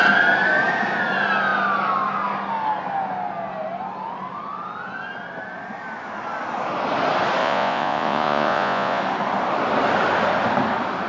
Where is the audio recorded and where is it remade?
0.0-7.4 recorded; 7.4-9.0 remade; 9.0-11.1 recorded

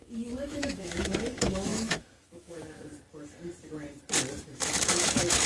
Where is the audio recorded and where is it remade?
0.0-2.9 remade; 2.9-4.4 recorded; 4.4-5.5 remade

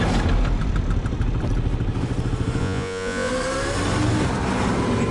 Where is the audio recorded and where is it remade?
0.0-2.6 recorded; 2.6-3.3 remade; 3.3-5.1 recorded

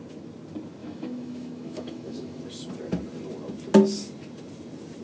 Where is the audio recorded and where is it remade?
0.0-0.8 recorded; 0.8-2.4 remade; 2.4-5.0 recorded

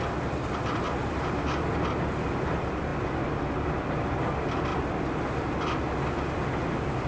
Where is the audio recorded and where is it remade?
0.0-7.1 recorded

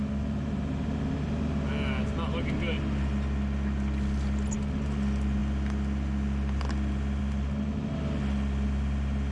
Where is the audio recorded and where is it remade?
0.0-9.3 recorded